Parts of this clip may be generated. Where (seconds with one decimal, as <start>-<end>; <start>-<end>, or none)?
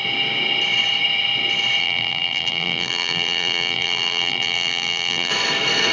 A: 1.8-5.3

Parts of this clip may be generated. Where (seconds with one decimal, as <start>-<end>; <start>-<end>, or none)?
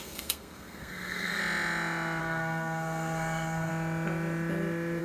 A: 0.0-1.4; 2.2-3.7